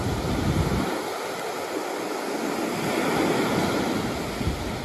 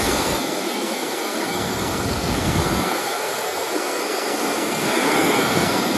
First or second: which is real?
first